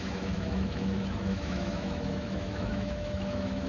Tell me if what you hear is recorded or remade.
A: remade